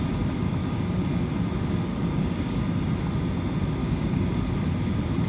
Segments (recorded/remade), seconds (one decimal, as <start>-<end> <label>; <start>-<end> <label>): 0.0-0.6 recorded; 0.6-1.2 remade; 1.2-1.9 recorded; 1.9-2.6 remade; 2.6-3.8 recorded; 3.8-4.4 remade; 4.4-5.3 recorded

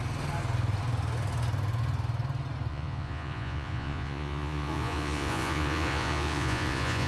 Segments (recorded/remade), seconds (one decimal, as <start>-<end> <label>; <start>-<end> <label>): 0.0-2.7 recorded; 2.7-7.1 remade

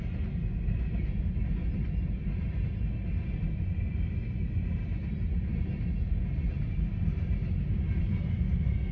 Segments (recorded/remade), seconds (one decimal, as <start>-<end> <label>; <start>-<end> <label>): 0.0-8.9 recorded

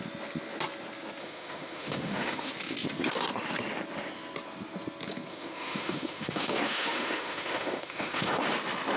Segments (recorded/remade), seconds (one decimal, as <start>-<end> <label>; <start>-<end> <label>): 0.0-1.2 recorded; 1.2-2.5 remade; 2.5-5.3 recorded; 5.3-8.4 remade; 8.4-9.0 recorded

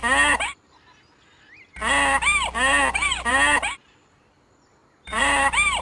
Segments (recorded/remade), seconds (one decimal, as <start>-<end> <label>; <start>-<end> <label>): 0.0-0.8 remade; 0.8-3.3 recorded; 3.3-4.3 remade; 4.3-4.8 recorded; 4.8-5.8 remade

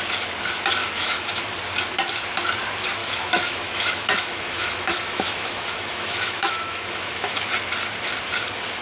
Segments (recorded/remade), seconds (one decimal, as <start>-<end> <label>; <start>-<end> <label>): 0.0-0.8 recorded; 0.8-1.4 remade; 1.4-3.0 recorded; 3.0-7.4 remade; 7.4-8.8 recorded

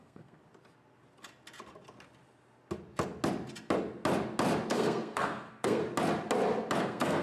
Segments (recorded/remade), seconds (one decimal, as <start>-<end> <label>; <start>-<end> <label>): 0.0-0.4 remade; 0.4-4.7 recorded; 4.7-5.8 remade; 5.8-6.8 recorded; 6.8-7.2 remade

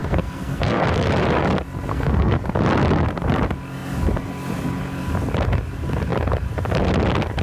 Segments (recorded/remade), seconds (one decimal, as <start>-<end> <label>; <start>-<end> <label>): 0.0-0.8 remade; 0.8-1.9 recorded; 1.9-2.6 remade; 2.6-7.4 recorded